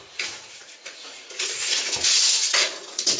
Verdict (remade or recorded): remade